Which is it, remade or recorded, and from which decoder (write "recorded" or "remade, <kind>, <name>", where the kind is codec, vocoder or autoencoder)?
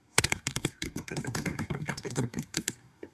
remade, codec, SNAC